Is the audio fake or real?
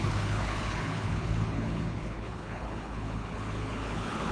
fake